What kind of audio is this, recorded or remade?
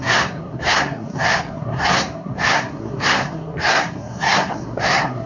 remade